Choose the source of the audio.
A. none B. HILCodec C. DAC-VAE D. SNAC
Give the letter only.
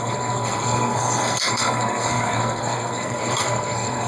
D